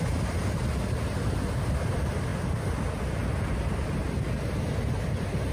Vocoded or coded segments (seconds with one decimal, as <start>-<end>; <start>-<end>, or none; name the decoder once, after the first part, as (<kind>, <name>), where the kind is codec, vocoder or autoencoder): none